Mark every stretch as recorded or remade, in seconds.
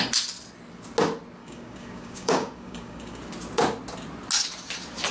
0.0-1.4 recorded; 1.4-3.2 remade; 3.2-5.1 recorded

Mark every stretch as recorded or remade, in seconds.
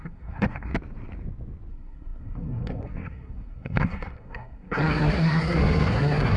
0.0-0.7 remade; 0.7-1.7 recorded; 1.7-6.4 remade